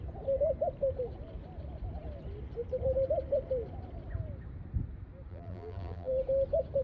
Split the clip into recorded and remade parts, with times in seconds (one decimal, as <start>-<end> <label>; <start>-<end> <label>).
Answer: 0.0-5.3 recorded; 5.3-6.1 remade; 6.1-6.8 recorded